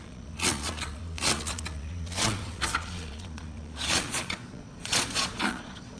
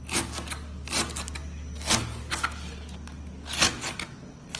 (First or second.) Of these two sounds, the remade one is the first